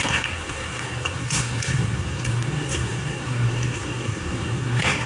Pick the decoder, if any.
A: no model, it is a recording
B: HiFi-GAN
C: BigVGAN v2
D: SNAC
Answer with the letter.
D